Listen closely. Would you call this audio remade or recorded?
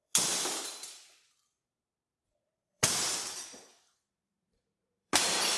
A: remade